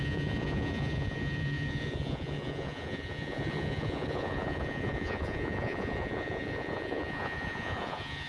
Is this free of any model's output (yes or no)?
no